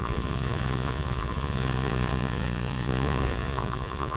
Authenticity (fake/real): fake